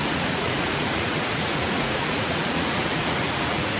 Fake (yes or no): yes